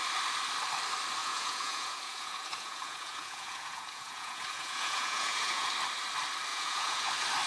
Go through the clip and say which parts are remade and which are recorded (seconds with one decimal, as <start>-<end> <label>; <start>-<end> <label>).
0.0-1.2 recorded; 1.2-5.7 remade; 5.7-6.5 recorded; 6.5-7.1 remade; 7.1-7.5 recorded